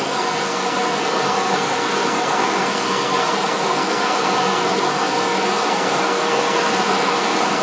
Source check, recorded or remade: remade